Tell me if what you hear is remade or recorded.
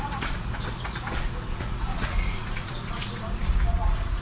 remade